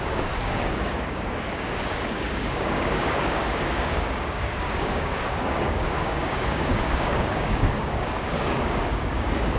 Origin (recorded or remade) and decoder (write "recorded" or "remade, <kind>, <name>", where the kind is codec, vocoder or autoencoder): remade, codec, DAC